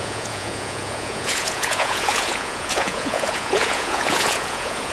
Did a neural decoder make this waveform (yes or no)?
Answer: yes